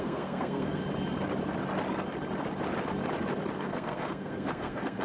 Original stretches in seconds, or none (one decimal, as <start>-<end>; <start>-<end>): 0.8-3.5